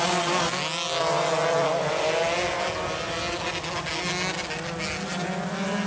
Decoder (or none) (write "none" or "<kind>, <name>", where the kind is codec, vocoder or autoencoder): none